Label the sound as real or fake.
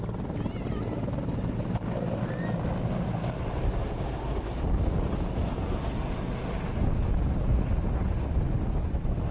real